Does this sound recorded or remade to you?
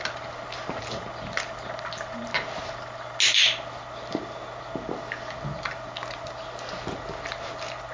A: recorded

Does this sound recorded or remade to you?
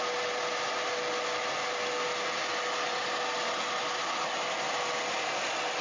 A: recorded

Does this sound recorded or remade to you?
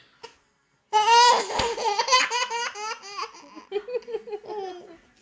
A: recorded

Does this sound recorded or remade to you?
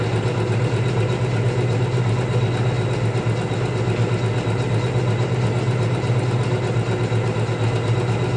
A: recorded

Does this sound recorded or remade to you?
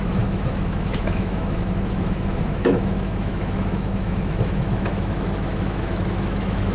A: remade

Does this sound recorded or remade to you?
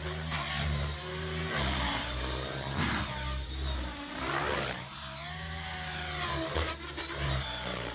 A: remade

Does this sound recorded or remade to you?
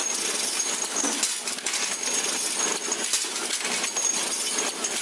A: recorded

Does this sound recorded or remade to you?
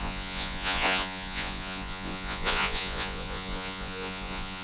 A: remade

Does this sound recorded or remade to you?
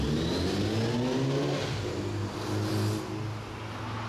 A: recorded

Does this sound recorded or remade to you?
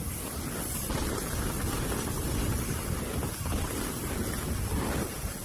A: recorded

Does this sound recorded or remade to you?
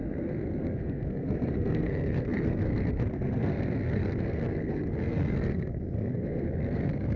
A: remade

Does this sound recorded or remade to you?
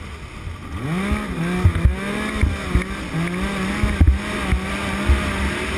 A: recorded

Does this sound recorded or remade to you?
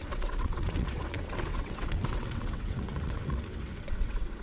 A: remade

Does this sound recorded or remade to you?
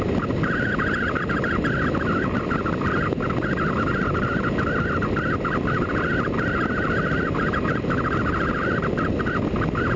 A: recorded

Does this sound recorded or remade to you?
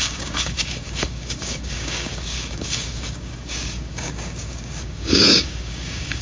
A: remade